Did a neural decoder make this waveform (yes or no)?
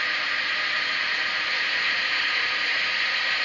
yes